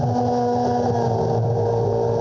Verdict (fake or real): real